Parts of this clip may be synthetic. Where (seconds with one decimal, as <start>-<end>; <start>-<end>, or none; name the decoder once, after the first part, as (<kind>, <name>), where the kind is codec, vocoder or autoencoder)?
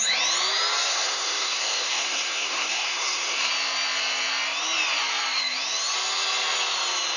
0.9-3.5 (codec, SNAC)